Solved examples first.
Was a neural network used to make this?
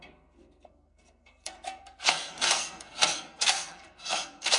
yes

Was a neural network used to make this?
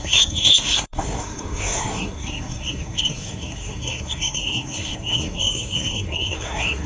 yes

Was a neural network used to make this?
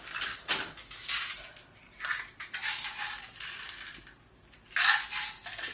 no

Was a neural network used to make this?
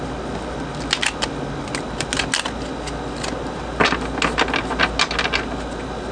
no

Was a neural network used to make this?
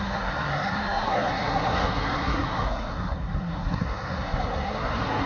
yes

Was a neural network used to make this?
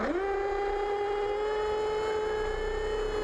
no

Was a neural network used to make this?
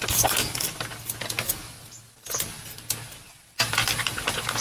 no